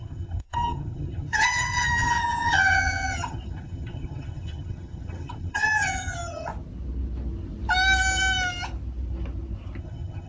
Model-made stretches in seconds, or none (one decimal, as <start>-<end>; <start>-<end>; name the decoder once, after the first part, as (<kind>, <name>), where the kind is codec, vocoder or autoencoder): 0.0-6.5 (vocoder, HiFi-GAN); 9.8-10.3